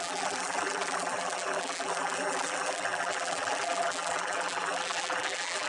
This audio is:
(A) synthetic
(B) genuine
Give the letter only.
A